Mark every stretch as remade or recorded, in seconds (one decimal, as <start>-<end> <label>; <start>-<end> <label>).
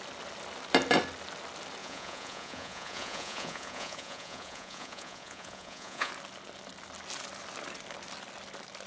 0.0-1.8 recorded; 1.8-6.1 remade; 6.1-8.9 recorded